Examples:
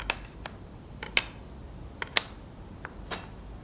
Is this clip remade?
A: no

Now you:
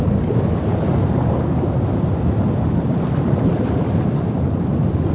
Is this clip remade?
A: no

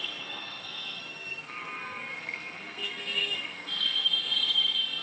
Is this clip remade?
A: yes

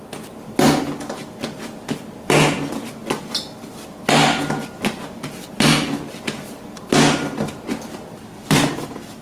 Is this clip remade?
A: no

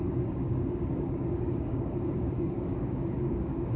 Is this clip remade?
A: yes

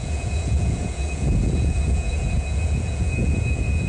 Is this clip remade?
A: yes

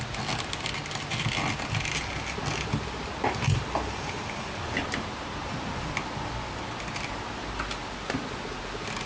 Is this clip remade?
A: no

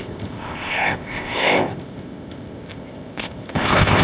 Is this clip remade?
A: yes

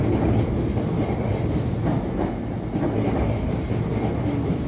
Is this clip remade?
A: no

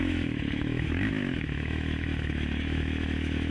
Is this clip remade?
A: yes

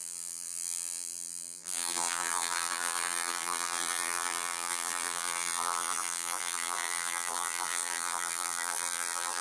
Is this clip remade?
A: yes